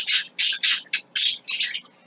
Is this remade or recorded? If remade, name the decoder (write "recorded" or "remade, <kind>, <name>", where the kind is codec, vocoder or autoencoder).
recorded